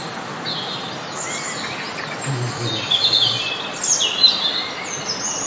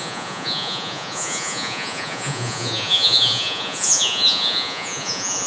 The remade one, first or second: second